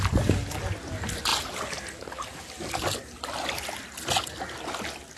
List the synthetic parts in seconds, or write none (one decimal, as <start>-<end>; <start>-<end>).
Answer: none